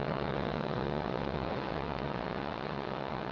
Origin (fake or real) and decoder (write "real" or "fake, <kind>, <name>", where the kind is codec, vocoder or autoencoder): fake, vocoder, WaveNeXt